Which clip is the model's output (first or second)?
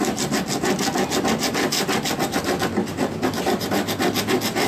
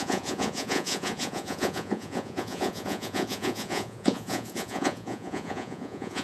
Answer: second